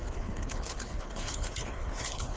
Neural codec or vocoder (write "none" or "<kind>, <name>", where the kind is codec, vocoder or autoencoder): codec, HILCodec